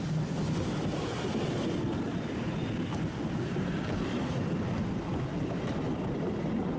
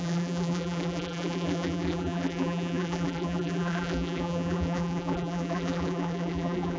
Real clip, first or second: first